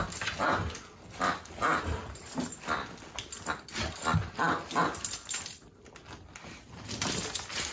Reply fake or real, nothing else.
real